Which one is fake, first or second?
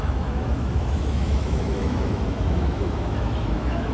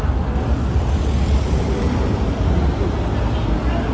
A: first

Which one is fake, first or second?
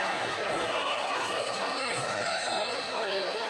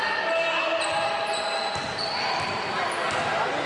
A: first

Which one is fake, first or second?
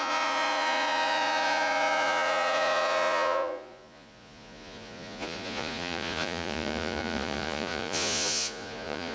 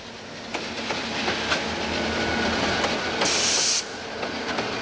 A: first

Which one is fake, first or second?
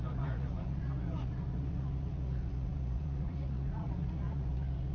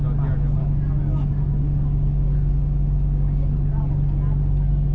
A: first